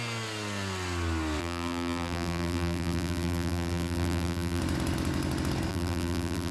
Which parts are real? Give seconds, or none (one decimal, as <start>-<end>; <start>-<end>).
0.0-1.4; 4.6-5.7